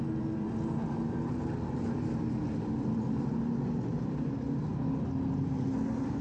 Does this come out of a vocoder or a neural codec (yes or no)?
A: no